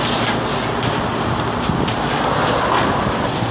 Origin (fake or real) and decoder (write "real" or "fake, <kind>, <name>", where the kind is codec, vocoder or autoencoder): real